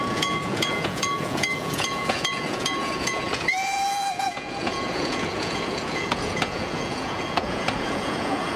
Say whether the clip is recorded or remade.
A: remade